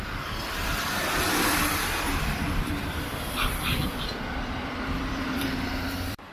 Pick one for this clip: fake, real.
fake